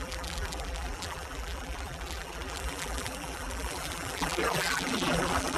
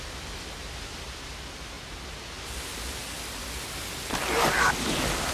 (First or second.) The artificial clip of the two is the first